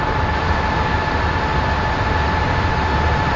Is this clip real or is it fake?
real